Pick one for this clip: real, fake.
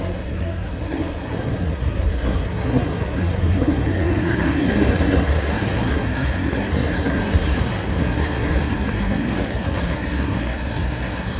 fake